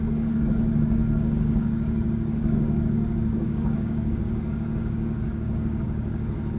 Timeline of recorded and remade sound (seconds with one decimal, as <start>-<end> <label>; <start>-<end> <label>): 0.0-6.6 remade